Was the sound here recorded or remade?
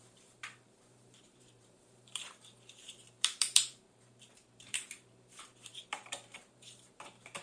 remade